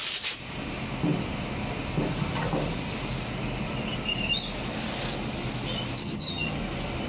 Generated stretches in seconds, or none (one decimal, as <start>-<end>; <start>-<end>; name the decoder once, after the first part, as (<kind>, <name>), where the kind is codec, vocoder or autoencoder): 6.0-6.6 (vocoder, HiFi-GAN)